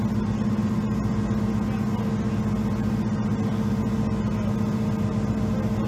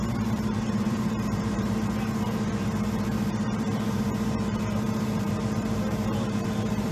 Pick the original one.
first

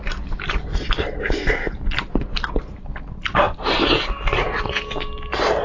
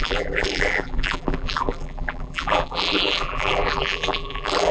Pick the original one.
first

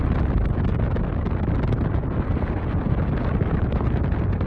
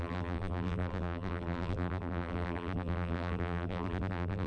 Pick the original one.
first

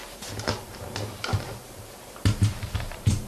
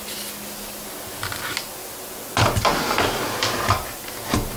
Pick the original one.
second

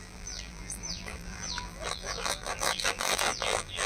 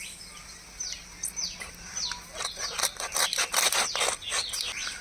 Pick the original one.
second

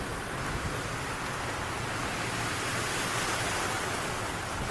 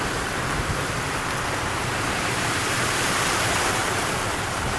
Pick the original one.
first